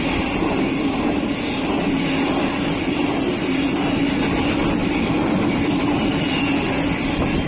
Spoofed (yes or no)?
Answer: no